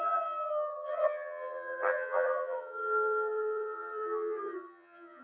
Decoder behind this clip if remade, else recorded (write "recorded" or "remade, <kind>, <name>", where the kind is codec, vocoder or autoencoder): remade, vocoder, HiFi-GAN